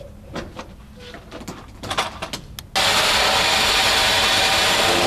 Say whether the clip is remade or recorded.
recorded